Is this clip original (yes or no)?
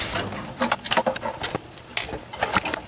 yes